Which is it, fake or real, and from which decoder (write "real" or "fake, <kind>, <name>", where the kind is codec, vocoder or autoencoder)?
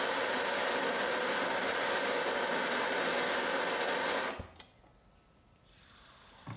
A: real